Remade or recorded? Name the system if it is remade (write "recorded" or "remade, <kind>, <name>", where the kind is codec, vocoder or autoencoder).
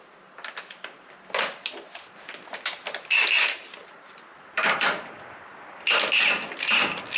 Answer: recorded